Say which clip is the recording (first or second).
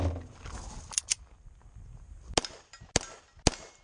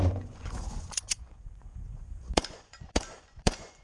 first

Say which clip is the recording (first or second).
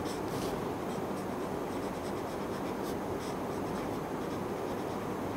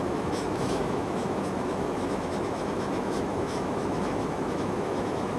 first